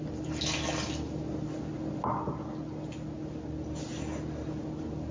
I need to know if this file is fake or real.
real